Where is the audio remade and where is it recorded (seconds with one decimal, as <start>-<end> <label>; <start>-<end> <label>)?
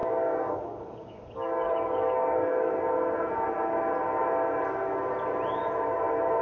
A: 0.0-2.7 remade; 2.7-6.4 recorded